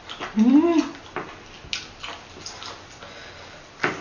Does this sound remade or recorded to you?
recorded